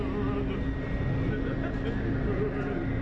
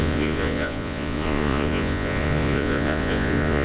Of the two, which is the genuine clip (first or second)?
first